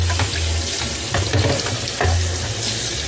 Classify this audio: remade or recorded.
recorded